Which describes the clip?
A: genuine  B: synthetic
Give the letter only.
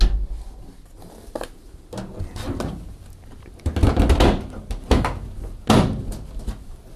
A